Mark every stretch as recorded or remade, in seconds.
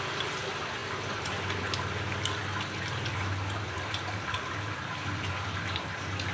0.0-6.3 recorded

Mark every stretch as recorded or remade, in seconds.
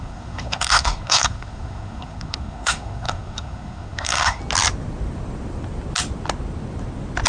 0.0-4.4 remade; 4.4-7.3 recorded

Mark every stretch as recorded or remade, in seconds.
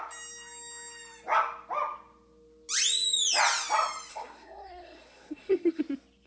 0.0-4.1 recorded; 4.1-5.8 remade; 5.8-6.3 recorded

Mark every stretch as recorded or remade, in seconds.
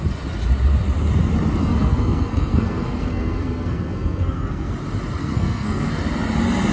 0.0-1.6 recorded; 1.6-4.7 remade; 4.7-5.2 recorded; 5.2-5.9 remade; 5.9-6.7 recorded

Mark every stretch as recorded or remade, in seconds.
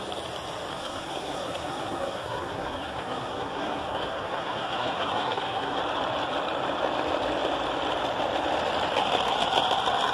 0.0-0.7 recorded; 0.7-5.8 remade; 5.8-10.1 recorded